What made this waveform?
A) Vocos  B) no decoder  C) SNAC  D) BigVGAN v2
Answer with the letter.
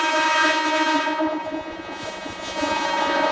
A